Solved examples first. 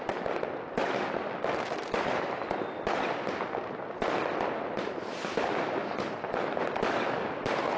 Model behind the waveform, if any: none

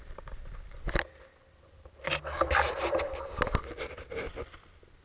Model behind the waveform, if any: none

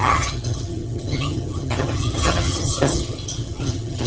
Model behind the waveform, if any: vocoder, HiFi-GAN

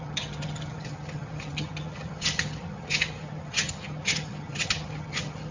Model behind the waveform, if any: vocoder, HiFi-GAN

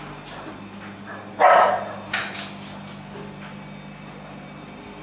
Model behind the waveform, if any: none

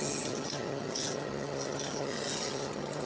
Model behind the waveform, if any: vocoder, HiFi-GAN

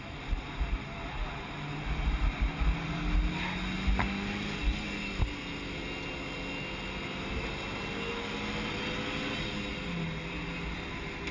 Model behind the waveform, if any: none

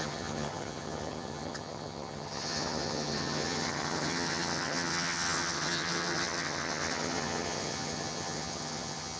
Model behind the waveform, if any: vocoder, HiFi-GAN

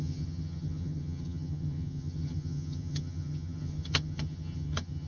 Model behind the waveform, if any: vocoder, HiFi-GAN